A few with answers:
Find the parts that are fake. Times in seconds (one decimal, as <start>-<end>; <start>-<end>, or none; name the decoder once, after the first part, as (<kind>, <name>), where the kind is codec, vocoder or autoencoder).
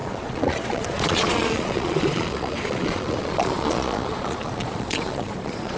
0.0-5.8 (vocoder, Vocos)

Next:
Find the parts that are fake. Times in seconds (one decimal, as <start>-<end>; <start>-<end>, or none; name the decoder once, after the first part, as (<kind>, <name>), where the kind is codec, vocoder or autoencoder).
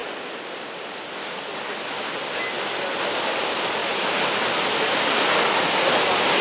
none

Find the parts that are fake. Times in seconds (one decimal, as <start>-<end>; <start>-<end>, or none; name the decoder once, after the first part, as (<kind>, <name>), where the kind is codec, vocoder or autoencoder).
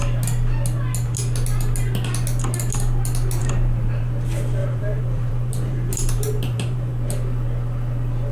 3.4-4.0 (vocoder, BigVGAN v2); 4.6-6.9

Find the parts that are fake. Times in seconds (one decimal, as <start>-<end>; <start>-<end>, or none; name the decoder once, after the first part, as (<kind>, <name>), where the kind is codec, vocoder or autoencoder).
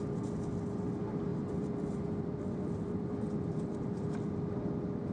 1.3-4.1 (vocoder, BigVGAN v2)